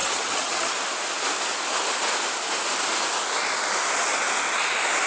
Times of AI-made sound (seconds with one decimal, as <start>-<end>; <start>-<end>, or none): 0.0-0.7